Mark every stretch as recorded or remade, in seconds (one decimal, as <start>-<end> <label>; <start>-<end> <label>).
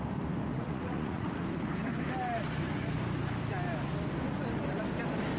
0.0-0.5 recorded; 0.5-1.3 remade; 1.3-5.4 recorded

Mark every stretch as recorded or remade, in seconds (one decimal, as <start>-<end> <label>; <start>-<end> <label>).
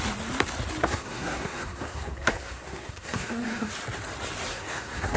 0.0-0.8 recorded; 0.8-3.7 remade; 3.7-4.5 recorded; 4.5-5.2 remade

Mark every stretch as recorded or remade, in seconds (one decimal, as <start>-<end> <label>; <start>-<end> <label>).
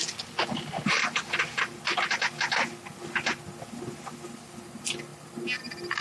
0.0-6.0 recorded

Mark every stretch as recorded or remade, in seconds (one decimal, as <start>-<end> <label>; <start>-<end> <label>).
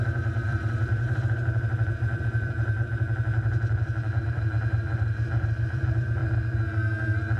0.0-6.2 remade; 6.2-7.4 recorded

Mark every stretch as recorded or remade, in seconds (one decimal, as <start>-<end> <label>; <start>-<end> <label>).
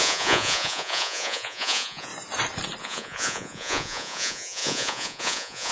0.0-2.1 remade; 2.1-2.8 recorded; 2.8-5.7 remade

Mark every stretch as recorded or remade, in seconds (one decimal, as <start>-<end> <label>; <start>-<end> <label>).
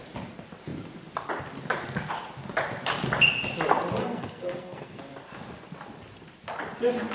0.0-4.0 recorded; 4.0-5.0 remade; 5.0-7.1 recorded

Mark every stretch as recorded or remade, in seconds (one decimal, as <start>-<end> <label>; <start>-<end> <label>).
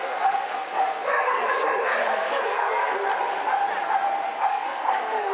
0.0-1.4 remade; 1.4-2.1 recorded; 2.1-3.1 remade; 3.1-4.5 recorded; 4.5-5.3 remade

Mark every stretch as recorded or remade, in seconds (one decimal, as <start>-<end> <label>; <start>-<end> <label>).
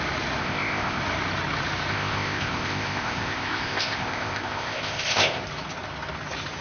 0.0-0.4 recorded; 0.4-1.0 remade; 1.0-1.9 recorded; 1.9-5.4 remade; 5.4-6.6 recorded